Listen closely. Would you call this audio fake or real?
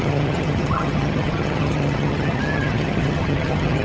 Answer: fake